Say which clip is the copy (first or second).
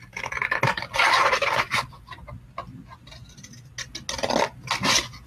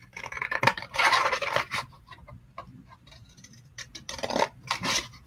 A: second